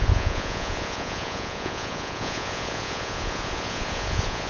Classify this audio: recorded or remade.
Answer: remade